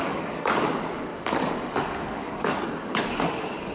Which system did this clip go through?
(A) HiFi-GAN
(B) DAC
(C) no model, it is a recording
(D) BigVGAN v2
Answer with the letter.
B